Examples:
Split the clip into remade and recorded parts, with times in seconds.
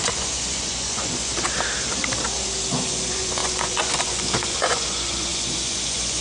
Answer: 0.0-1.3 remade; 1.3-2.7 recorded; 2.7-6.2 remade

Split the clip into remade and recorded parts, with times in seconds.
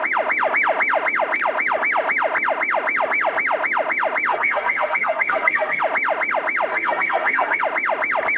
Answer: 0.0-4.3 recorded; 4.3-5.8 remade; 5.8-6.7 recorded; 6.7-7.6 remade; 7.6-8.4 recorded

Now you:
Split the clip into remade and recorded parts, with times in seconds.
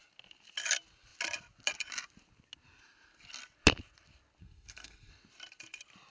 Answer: 0.0-4.4 recorded; 4.4-5.1 remade; 5.1-6.1 recorded